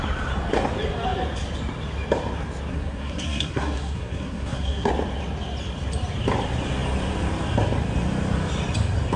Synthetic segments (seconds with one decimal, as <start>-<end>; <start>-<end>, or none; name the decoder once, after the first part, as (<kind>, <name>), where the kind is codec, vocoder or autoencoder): 2.7-4.9 (codec, SNAC)